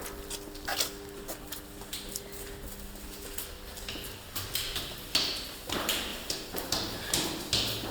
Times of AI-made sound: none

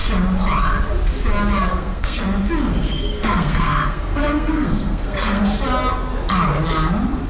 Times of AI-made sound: 1.7-2.2 (codec, SNAC); 2.7-5.4

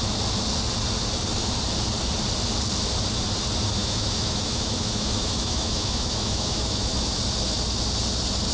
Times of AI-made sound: 3.8-7.2 (autoencoder, DAC-VAE)

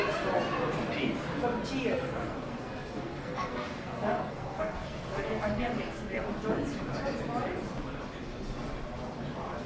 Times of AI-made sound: 1.9-6.3 (codec, SNAC)